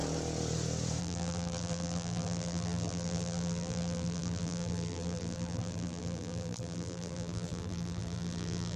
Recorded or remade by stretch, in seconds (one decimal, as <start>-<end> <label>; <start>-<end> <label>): 0.0-1.0 recorded; 1.0-8.8 remade